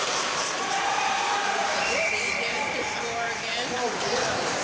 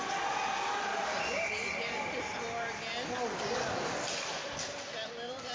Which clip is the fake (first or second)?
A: first